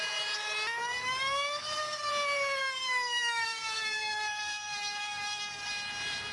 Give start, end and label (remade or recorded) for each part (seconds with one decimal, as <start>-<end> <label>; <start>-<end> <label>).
0.0-0.8 recorded; 0.8-2.1 remade; 2.1-2.6 recorded; 2.6-5.7 remade; 5.7-6.3 recorded